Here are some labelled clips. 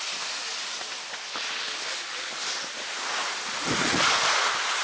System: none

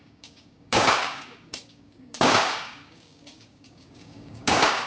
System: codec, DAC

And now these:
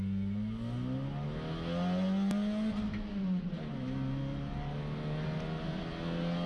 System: none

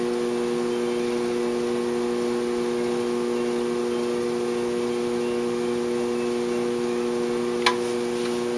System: none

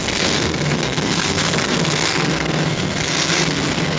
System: codec, SNAC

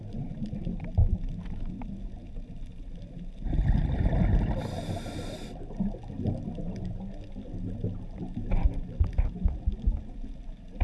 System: none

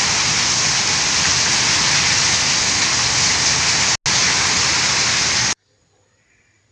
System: none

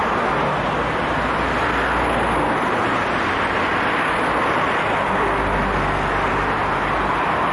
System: none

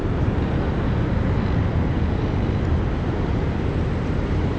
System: none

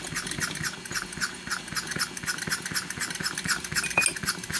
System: none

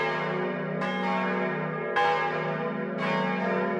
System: none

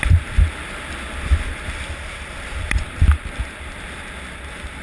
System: none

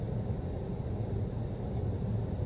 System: none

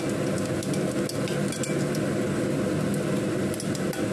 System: none